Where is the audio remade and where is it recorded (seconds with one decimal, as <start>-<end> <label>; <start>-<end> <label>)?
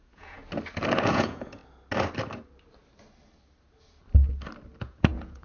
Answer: 0.0-0.4 remade; 0.4-1.1 recorded; 1.1-1.6 remade; 1.6-4.8 recorded; 4.8-5.4 remade